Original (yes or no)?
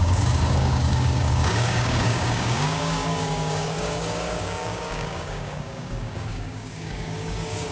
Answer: no